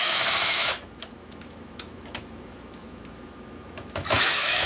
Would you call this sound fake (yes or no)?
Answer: yes